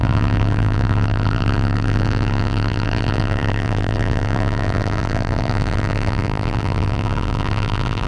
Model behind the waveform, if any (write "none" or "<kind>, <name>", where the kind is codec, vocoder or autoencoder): vocoder, BigVGAN v2